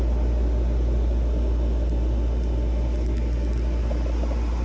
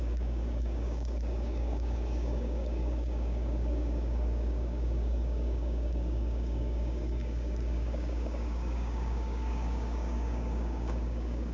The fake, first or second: second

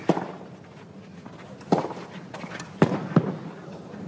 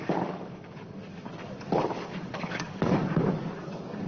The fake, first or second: second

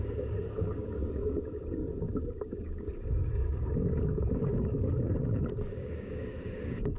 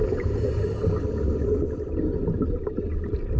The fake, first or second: first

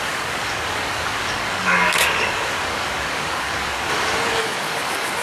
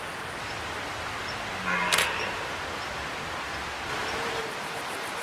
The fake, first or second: first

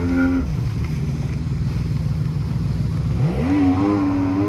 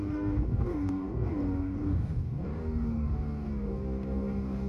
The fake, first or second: second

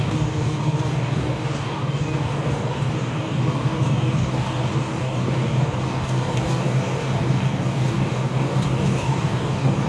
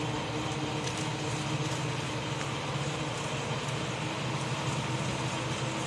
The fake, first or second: first